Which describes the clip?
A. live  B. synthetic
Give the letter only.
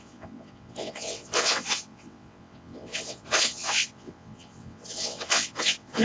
B